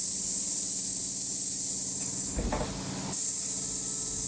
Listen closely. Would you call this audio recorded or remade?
recorded